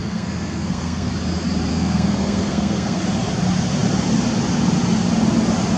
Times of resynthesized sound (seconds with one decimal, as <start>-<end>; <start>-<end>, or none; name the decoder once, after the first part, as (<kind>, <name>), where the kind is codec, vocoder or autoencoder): 0.0-1.1 (codec, SNAC); 1.7-3.0